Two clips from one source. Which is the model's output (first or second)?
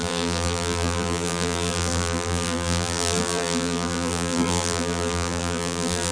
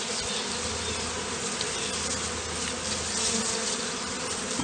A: first